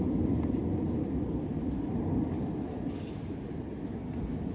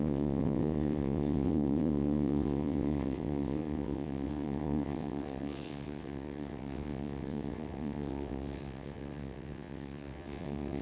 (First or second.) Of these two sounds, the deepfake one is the second